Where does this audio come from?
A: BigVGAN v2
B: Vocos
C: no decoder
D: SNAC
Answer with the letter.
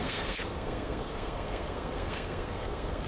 D